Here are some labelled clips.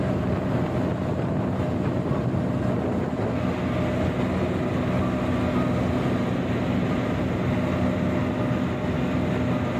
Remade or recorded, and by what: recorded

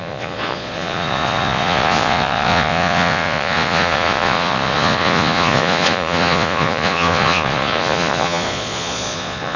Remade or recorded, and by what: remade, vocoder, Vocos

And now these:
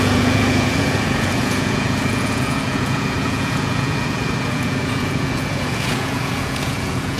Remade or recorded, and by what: remade, vocoder, Vocos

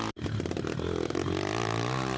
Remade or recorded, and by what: recorded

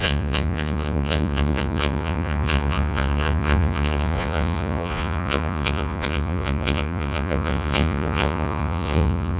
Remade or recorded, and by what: remade, vocoder, Vocos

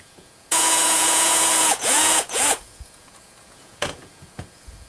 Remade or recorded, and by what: remade, vocoder, Vocos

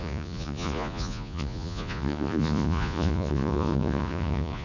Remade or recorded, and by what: remade, vocoder, Vocos